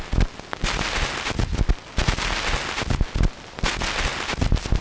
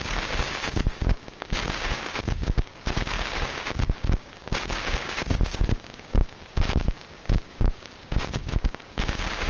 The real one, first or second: first